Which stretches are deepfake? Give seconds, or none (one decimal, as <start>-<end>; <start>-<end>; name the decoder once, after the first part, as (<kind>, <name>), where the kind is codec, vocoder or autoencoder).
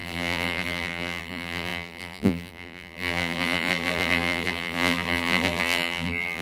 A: 0.0-6.4 (vocoder, BigVGAN v2)